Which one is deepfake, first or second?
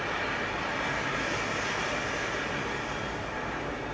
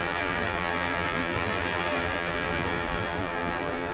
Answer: second